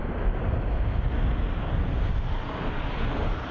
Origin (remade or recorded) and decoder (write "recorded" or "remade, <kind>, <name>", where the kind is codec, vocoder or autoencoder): recorded